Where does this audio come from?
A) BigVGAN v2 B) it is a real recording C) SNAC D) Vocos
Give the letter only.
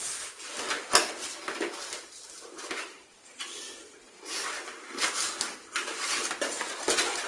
B